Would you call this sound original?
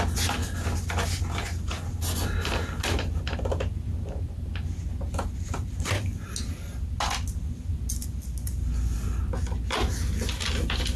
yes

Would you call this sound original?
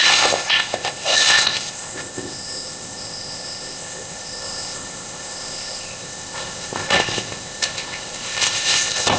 no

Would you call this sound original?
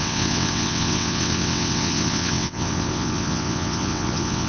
no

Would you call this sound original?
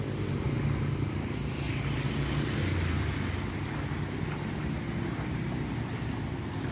yes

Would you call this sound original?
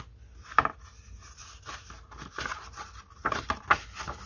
yes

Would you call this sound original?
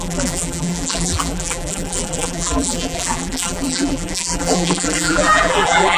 no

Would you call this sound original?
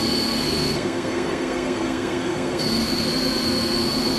no